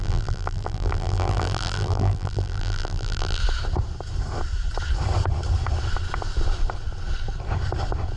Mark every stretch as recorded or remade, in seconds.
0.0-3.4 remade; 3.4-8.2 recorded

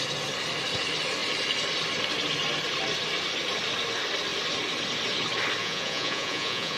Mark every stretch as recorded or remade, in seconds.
0.0-5.6 recorded; 5.6-6.8 remade

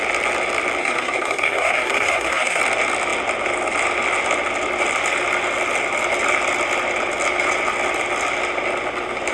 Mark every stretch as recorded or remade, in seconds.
0.0-0.8 recorded; 0.8-2.6 remade; 2.6-9.3 recorded

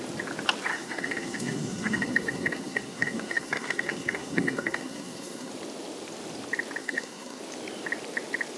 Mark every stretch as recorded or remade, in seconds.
0.0-0.7 recorded; 0.7-5.5 remade; 5.5-6.8 recorded; 6.8-7.4 remade; 7.4-8.6 recorded